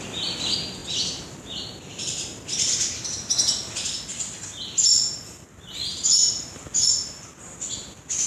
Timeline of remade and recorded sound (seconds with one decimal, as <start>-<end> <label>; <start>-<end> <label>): 0.0-8.3 recorded